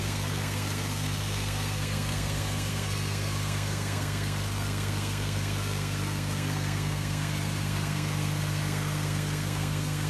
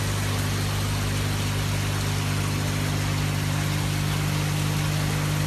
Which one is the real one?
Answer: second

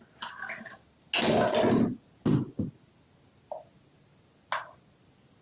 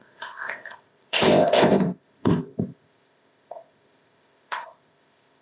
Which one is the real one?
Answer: first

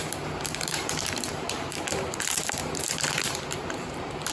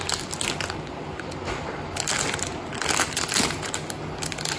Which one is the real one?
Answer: second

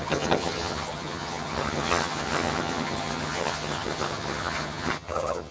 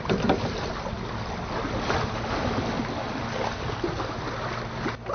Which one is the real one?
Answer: second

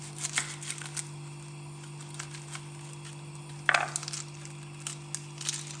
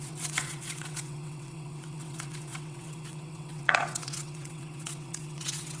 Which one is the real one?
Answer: first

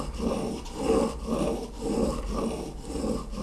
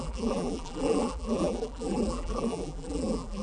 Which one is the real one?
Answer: first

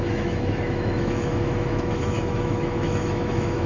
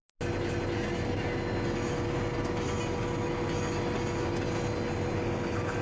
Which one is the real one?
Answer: second